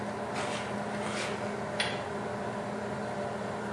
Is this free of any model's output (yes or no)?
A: yes